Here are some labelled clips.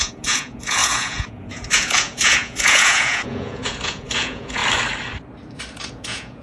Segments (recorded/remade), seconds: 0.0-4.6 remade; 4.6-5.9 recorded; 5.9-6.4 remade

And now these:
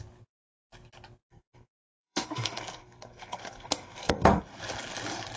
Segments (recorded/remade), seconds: 0.0-1.2 recorded; 1.2-4.4 remade; 4.4-5.4 recorded

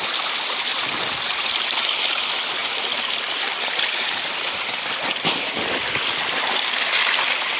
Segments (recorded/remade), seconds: 0.0-2.6 recorded; 2.6-5.8 remade; 5.8-7.6 recorded

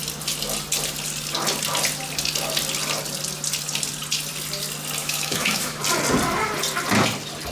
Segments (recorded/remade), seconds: 0.0-5.0 recorded; 5.0-5.8 remade; 5.8-7.5 recorded

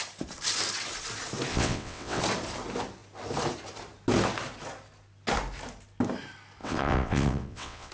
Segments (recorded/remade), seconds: 0.0-1.5 recorded; 1.5-2.2 remade; 2.2-6.6 recorded; 6.6-7.9 remade

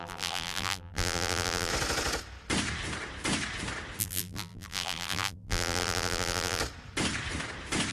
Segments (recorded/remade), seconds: 0.0-1.7 remade; 1.7-4.0 recorded; 4.0-6.6 remade; 6.6-7.9 recorded

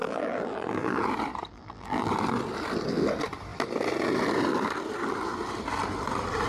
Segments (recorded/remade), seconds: 0.0-1.0 remade; 1.0-1.5 recorded; 1.5-2.1 remade; 2.1-6.5 recorded